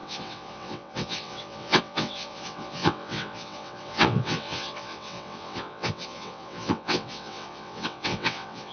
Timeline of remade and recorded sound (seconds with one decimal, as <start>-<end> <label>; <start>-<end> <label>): 0.0-8.7 remade